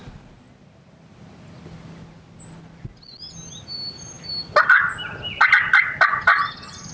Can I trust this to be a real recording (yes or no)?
yes